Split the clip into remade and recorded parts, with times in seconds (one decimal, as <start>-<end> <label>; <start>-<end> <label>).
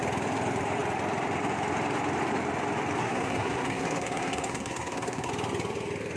0.0-3.0 recorded; 3.0-5.3 remade; 5.3-6.2 recorded